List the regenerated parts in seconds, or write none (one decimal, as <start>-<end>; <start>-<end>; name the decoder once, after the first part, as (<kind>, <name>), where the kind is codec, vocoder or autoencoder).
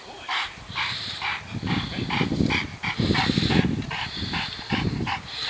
0.0-1.3 (vocoder, BigVGAN v2); 2.9-5.5